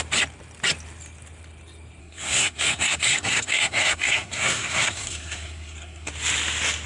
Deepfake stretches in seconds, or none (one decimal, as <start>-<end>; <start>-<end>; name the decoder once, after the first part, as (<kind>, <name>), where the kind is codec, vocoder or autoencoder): 2.0-6.1 (codec, SNAC)